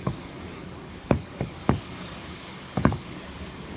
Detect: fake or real fake